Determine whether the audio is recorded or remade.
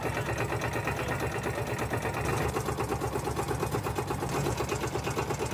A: recorded